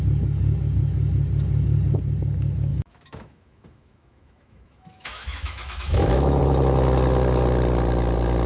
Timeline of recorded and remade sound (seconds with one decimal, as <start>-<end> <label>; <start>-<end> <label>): 0.0-2.7 recorded; 2.7-6.4 remade; 6.4-8.5 recorded